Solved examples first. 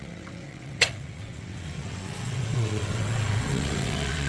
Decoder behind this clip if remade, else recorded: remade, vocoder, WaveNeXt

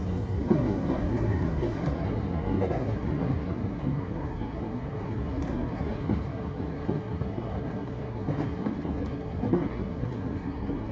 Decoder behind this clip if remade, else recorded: remade, codec, SNAC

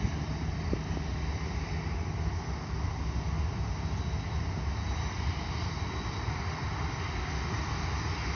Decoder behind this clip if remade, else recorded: recorded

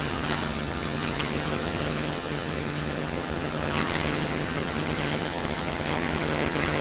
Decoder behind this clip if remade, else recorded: remade, vocoder, HiFi-GAN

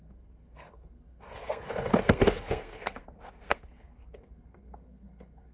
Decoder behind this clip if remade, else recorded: remade, codec, SNAC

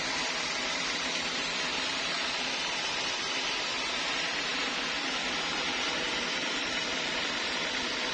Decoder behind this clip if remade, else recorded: recorded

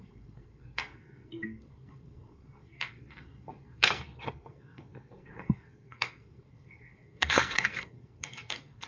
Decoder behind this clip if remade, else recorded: remade, codec, SNAC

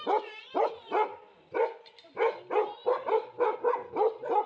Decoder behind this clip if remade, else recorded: recorded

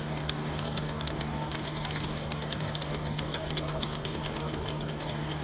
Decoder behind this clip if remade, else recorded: remade, codec, DAC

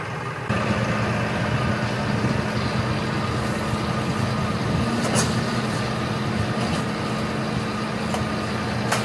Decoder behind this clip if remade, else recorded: recorded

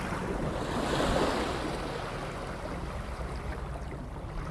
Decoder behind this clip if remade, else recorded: recorded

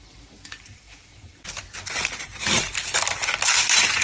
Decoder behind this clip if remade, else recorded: recorded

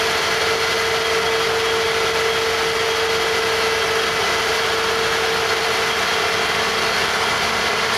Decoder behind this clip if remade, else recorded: recorded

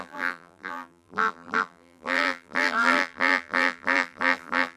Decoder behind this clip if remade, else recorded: remade, vocoder, BigVGAN v2